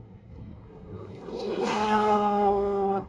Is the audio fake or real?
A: fake